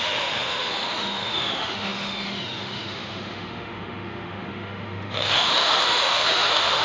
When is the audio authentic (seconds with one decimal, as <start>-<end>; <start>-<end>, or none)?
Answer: none